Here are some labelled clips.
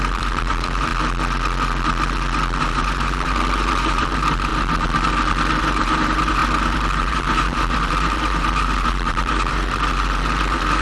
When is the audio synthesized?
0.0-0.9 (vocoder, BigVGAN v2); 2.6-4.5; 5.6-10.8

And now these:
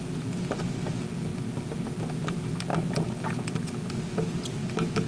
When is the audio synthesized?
1.3-2.0 (vocoder, BigVGAN v2); 4.6-5.1

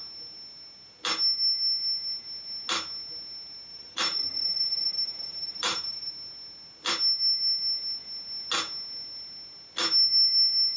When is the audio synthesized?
3.7-6.1 (vocoder, BigVGAN v2)

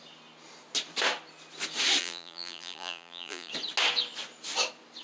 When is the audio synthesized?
2.0-3.5 (vocoder, BigVGAN v2)

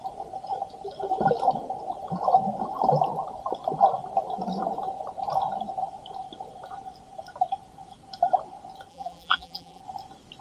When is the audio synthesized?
8.9-9.8 (vocoder, BigVGAN v2)

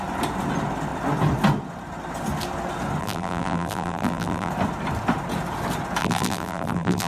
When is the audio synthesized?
3.0-4.5 (vocoder, BigVGAN v2); 6.0-7.1

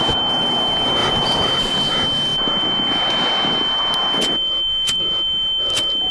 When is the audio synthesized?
1.0-1.9 (vocoder, BigVGAN v2)